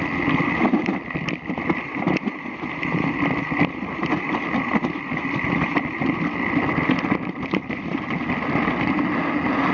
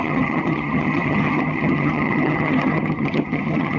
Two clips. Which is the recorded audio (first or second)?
first